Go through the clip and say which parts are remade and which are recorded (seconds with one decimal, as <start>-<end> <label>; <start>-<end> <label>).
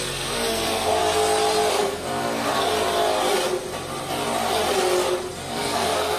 0.0-1.0 remade; 1.0-1.7 recorded; 1.7-2.7 remade; 2.7-5.5 recorded; 5.5-6.2 remade